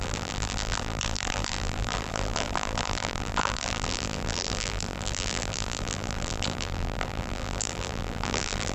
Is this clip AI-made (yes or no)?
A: yes